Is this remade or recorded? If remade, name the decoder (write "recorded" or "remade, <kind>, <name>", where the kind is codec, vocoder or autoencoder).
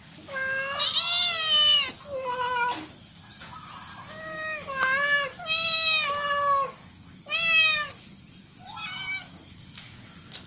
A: recorded